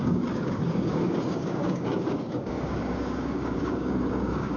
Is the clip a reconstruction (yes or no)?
yes